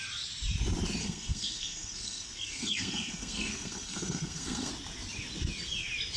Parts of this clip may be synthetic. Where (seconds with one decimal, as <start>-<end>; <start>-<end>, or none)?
1.0-4.7